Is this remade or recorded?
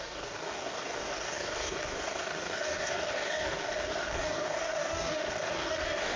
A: remade